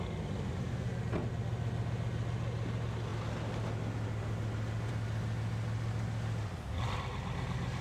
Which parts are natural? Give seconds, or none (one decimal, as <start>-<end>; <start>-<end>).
0.0-7.8